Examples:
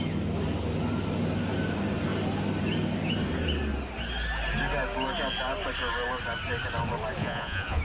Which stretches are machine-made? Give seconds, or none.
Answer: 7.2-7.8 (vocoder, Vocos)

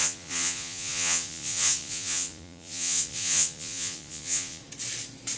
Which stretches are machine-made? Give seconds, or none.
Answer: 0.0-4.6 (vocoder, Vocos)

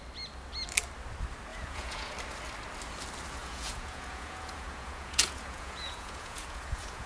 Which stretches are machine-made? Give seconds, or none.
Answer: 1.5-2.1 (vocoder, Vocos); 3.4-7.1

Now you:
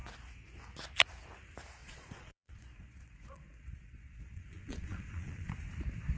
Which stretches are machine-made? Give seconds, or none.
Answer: 1.8-5.5 (vocoder, Vocos)

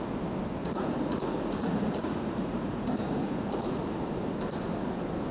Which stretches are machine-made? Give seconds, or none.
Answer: 0.6-3.8 (vocoder, Vocos)

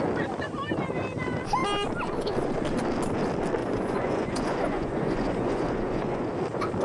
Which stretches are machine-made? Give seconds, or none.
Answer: 3.6-6.3 (vocoder, Vocos)